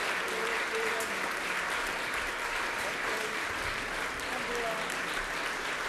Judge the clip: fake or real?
real